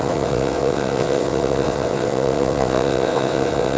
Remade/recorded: remade